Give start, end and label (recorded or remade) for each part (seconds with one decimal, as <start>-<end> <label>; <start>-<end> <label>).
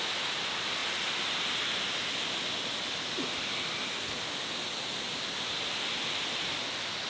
0.0-7.1 recorded